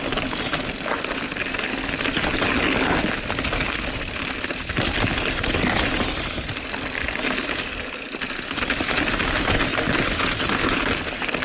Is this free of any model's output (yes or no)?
yes